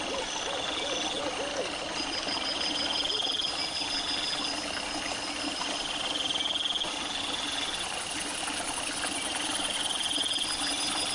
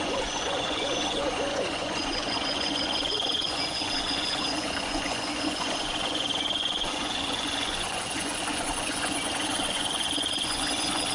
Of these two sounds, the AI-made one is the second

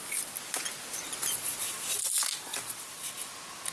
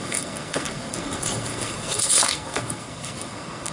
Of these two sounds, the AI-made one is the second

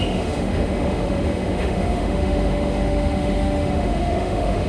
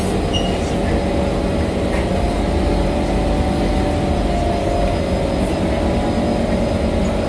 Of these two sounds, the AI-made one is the first